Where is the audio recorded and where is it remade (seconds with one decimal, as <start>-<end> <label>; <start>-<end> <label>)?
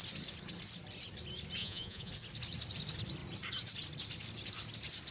0.0-1.6 recorded; 1.6-2.1 remade; 2.1-5.1 recorded